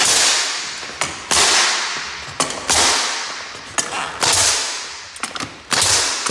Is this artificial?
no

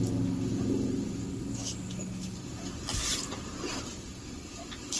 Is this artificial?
no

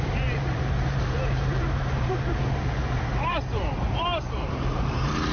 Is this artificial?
yes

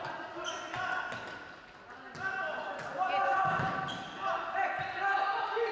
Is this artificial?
no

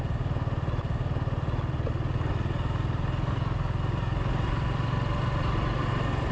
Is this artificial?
no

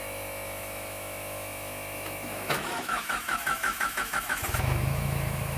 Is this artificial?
yes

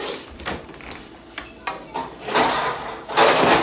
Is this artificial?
no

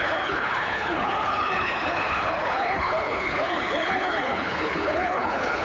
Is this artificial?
yes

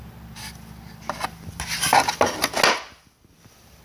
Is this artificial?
no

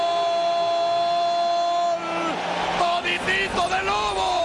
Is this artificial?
no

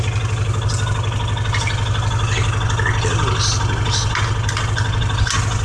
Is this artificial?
no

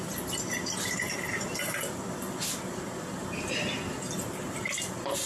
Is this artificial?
no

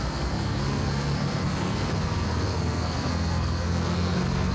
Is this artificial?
yes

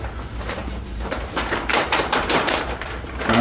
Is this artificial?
yes